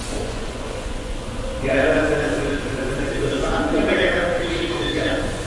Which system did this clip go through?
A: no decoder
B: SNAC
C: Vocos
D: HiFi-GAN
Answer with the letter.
C